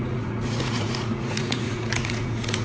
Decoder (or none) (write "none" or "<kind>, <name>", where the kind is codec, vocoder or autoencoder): vocoder, Vocos